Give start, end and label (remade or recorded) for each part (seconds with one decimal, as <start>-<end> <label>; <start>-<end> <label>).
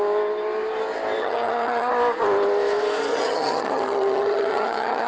0.0-1.2 recorded; 1.2-1.9 remade; 1.9-3.1 recorded; 3.1-5.1 remade